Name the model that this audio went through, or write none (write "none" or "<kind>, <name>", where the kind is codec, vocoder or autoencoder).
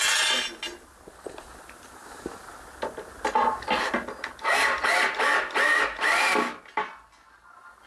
none